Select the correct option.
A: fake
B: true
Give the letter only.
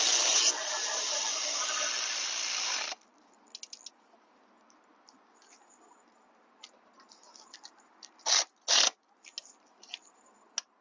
B